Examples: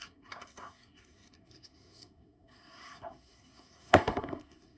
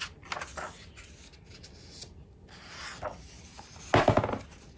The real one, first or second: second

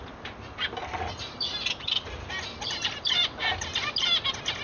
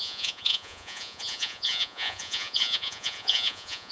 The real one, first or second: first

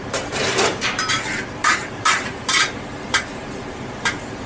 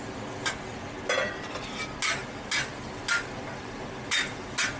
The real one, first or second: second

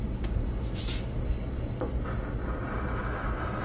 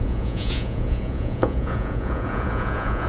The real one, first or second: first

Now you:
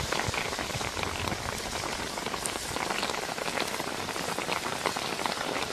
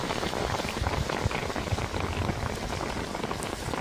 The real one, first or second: second